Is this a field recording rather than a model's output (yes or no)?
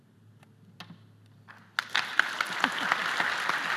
yes